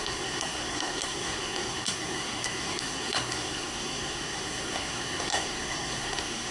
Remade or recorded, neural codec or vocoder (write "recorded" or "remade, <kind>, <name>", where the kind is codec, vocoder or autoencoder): remade, codec, SNAC